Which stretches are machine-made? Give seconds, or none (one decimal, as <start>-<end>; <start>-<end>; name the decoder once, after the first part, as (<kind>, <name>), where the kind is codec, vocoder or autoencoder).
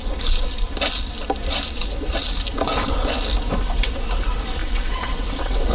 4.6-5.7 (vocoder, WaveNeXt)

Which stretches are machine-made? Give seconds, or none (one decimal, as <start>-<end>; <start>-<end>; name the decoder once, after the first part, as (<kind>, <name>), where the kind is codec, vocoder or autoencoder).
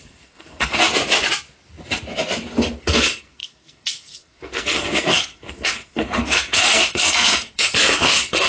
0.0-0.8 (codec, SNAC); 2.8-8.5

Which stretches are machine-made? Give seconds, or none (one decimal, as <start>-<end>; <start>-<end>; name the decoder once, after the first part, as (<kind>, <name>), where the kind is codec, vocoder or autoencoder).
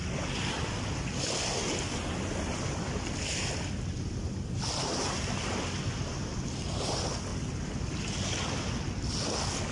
none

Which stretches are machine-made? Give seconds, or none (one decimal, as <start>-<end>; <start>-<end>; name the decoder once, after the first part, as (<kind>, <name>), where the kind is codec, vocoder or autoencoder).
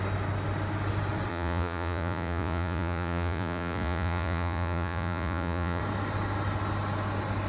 1.3-5.8 (vocoder, Vocos)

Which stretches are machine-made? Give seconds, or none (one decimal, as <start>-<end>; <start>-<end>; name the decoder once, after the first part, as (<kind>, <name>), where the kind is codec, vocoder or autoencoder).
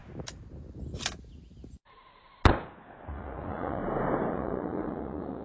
3.0-3.8 (vocoder, Vocos); 4.3-5.4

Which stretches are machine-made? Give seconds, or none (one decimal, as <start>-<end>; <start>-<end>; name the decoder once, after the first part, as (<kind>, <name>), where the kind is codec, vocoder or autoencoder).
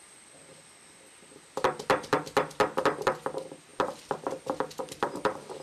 none